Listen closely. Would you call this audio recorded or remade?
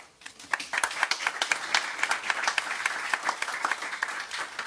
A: recorded